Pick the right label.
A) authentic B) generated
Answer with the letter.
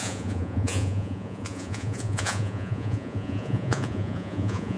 B